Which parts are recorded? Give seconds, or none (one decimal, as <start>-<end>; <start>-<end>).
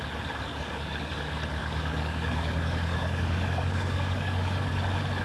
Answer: 0.0-0.5; 1.1-1.6; 4.7-5.2